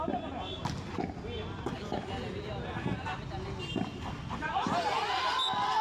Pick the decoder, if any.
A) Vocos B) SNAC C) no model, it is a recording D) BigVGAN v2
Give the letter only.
C